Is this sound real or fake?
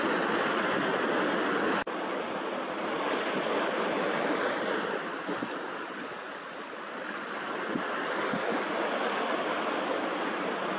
real